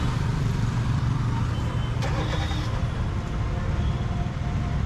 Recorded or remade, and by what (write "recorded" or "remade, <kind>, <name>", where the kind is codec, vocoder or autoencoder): recorded